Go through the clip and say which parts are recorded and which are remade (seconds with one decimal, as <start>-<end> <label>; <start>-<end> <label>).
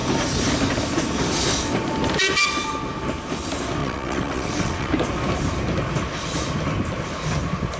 0.0-3.8 recorded; 3.8-4.9 remade; 4.9-7.8 recorded